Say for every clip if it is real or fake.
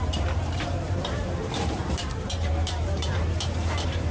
fake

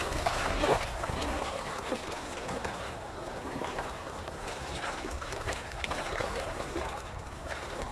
fake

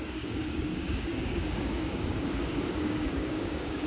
fake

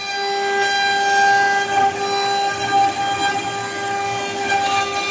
real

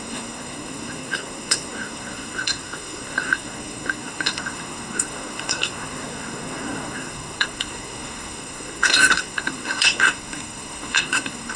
fake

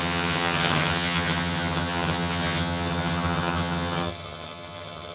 fake